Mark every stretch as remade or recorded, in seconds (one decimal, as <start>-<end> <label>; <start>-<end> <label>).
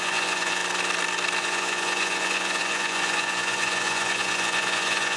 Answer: 0.0-0.6 remade; 0.6-1.4 recorded; 1.4-5.2 remade